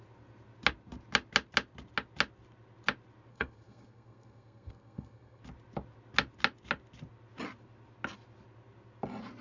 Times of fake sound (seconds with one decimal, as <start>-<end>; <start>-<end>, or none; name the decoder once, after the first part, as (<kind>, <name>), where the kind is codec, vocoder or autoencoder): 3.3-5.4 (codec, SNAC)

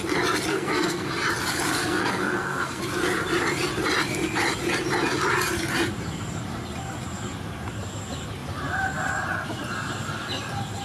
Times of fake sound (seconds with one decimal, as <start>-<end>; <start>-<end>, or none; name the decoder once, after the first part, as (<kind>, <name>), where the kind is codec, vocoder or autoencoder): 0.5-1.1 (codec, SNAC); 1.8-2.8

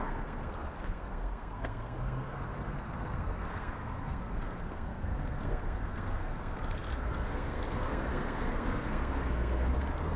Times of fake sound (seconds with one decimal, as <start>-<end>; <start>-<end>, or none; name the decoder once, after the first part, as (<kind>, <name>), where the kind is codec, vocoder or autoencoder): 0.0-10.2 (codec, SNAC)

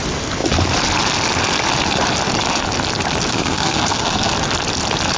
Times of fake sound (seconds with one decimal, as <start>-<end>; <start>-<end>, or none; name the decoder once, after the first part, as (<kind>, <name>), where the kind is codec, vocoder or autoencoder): 3.3-4.3 (codec, SNAC)

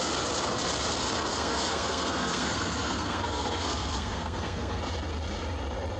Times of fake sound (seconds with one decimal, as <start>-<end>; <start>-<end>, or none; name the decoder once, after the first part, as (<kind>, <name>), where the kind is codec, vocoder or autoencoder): 1.3-4.8 (codec, SNAC)

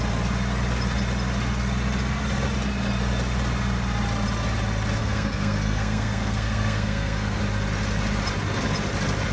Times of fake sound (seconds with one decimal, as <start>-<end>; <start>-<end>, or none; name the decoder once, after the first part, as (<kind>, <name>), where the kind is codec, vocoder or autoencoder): 5.0-7.4 (codec, SNAC)